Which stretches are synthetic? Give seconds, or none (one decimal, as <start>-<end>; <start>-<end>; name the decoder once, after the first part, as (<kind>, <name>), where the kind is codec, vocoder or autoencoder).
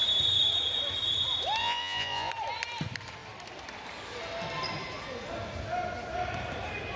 1.6-2.3 (vocoder, Vocos)